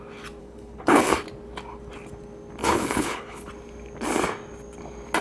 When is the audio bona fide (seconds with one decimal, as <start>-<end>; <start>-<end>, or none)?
0.0-0.4; 1.1-2.6; 3.5-5.2